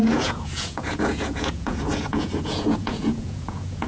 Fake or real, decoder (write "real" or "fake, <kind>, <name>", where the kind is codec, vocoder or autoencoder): fake, vocoder, Vocos